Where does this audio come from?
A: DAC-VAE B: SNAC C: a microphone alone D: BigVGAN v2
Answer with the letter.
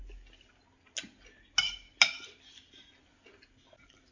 C